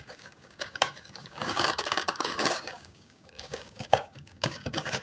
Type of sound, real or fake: fake